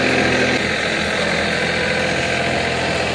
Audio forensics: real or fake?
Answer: real